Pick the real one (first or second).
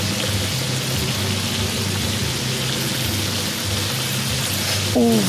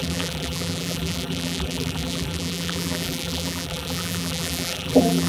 first